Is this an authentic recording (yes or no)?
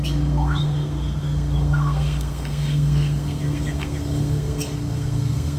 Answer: no